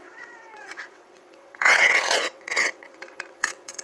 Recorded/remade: remade